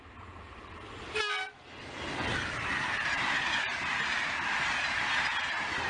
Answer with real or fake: real